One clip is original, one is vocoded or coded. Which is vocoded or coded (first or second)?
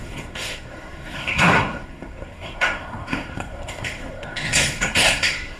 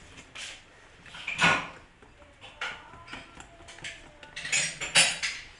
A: first